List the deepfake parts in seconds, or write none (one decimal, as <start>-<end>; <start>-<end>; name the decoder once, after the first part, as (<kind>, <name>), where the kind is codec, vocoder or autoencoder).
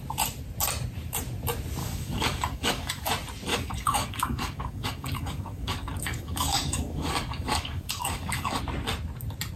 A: 1.8-3.1 (codec, DAC); 3.5-8.6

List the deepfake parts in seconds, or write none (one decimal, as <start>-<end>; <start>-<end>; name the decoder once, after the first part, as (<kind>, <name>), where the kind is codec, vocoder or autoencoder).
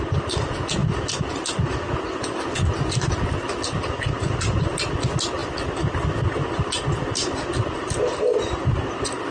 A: none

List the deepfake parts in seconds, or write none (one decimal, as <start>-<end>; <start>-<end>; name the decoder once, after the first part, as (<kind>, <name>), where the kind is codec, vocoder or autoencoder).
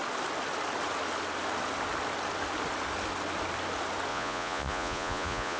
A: 4.1-5.6 (vocoder, Vocos)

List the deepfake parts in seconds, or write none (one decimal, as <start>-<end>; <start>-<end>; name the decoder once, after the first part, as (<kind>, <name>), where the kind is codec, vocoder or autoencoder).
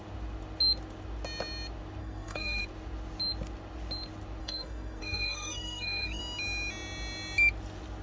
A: 2.0-2.6 (codec, SNAC); 4.4-6.2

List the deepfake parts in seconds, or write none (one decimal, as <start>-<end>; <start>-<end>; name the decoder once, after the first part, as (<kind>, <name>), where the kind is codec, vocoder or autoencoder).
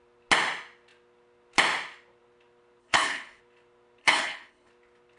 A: 2.8-3.4 (codec, HILCodec); 4.0-4.7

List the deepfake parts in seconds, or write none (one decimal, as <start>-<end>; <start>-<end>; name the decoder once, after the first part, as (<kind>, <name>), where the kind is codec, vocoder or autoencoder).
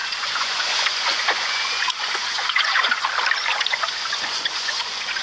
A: 0.0-3.1 (vocoder, Vocos); 3.5-5.2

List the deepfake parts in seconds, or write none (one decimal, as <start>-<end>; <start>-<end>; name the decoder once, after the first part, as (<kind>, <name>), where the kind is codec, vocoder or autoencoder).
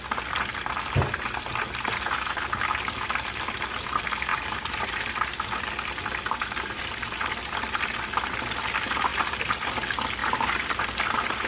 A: 4.3-5.6 (vocoder, BigVGAN v2); 9.1-9.7; 10.2-10.8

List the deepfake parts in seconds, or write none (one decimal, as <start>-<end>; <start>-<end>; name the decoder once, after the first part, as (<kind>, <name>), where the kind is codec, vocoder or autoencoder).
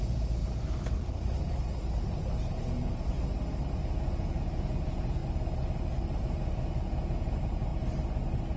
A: 0.0-0.4 (vocoder, Vocos); 3.7-5.2; 6.2-7.7